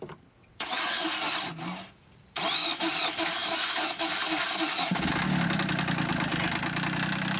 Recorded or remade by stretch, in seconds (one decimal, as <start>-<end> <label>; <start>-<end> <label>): 0.0-0.4 recorded; 0.4-1.1 remade; 1.1-7.4 recorded